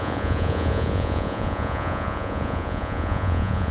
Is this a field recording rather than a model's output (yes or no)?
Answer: no